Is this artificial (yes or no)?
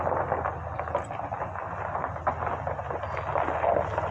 no